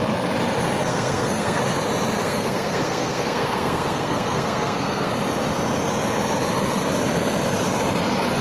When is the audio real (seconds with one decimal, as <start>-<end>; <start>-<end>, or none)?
0.0-0.9; 1.6-2.2; 5.1-8.4